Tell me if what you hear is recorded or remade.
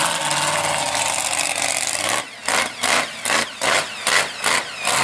recorded